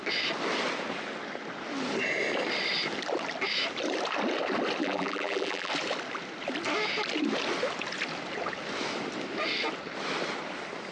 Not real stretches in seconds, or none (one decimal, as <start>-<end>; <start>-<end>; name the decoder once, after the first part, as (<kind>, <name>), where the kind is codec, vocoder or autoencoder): 4.8-5.7 (vocoder, BigVGAN v2)